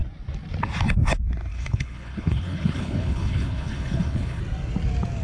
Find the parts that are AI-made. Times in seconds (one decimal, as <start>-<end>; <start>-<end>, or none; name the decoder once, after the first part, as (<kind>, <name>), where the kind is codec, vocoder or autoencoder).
1.5-4.4 (codec, HILCodec)